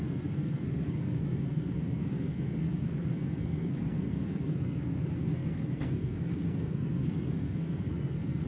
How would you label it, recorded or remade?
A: remade